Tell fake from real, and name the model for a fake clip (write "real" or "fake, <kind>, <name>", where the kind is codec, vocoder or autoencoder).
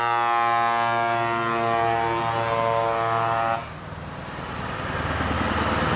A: real